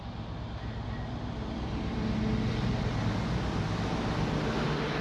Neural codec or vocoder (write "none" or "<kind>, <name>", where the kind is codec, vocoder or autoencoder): none